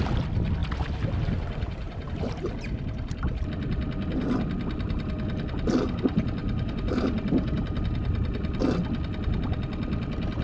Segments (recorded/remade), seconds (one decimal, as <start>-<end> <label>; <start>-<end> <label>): 0.0-0.6 recorded; 0.6-2.1 remade; 2.1-6.4 recorded; 6.4-7.8 remade; 7.8-10.4 recorded